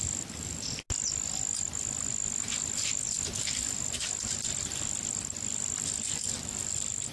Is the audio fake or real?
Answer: real